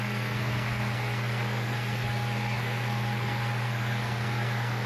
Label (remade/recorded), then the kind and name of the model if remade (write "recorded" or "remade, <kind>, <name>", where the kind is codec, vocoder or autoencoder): remade, codec, SNAC